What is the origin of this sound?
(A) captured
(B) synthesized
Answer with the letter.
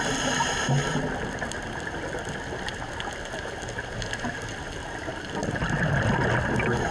A